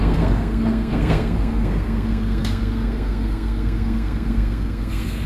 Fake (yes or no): yes